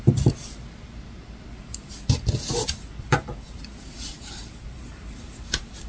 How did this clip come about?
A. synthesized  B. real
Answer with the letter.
B